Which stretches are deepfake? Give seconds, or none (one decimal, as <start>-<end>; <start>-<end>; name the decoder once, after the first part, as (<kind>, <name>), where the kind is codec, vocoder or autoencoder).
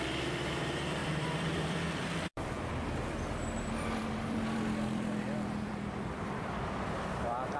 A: 1.0-2.7 (vocoder, BigVGAN v2); 4.0-7.6